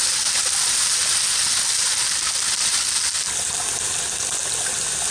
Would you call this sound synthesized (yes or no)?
no